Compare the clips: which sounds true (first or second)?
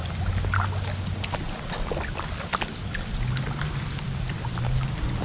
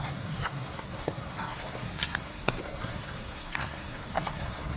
first